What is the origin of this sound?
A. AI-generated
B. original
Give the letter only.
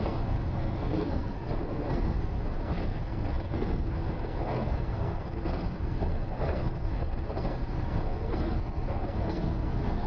A